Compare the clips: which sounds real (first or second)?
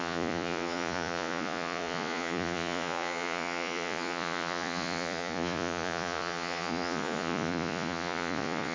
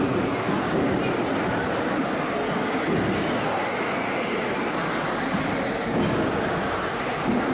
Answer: second